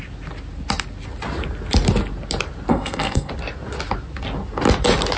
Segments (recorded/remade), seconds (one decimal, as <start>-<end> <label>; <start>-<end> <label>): 0.0-2.7 recorded; 2.7-3.3 remade; 3.3-5.2 recorded